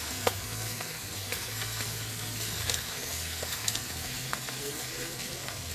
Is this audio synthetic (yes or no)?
yes